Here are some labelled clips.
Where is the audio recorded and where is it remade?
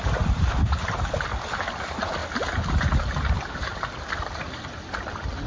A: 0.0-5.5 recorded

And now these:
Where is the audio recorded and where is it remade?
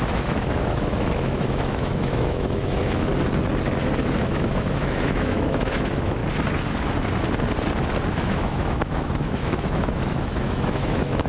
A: 0.0-3.1 remade; 3.1-4.2 recorded; 4.2-6.2 remade; 6.2-8.1 recorded; 8.1-11.3 remade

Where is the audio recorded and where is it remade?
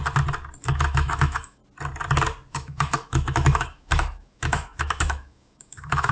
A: 0.0-0.6 recorded; 0.6-1.6 remade; 1.6-2.5 recorded; 2.5-6.1 remade